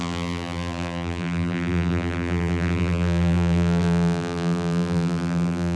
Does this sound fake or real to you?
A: fake